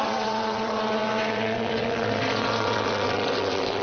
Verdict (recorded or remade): remade